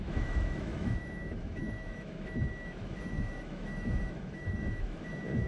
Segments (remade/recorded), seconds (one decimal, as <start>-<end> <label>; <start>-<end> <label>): 0.0-5.5 remade